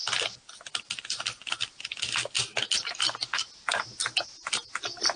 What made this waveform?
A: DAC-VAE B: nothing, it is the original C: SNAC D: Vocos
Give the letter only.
B